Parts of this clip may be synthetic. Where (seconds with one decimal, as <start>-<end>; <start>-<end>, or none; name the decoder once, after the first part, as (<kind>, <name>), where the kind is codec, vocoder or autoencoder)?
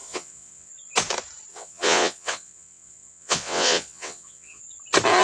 0.0-0.7 (vocoder, WaveNeXt); 1.5-4.6